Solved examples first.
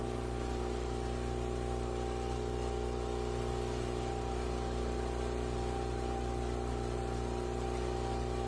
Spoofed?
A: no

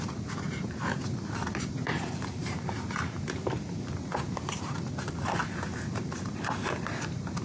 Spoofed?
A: yes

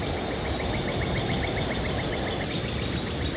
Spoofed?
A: no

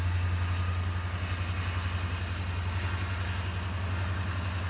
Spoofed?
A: no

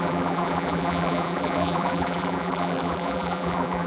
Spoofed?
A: yes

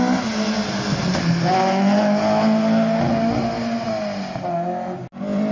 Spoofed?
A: no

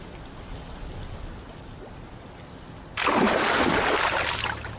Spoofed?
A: no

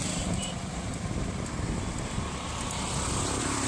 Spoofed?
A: yes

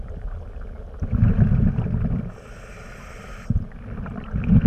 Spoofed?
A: no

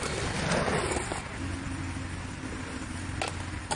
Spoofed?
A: no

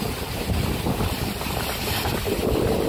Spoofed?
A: no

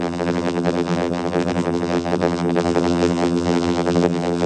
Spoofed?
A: yes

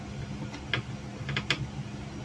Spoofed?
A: no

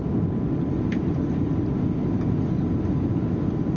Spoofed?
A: no